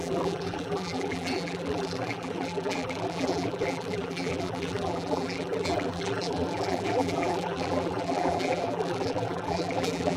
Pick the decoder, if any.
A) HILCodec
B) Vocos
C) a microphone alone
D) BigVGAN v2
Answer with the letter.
D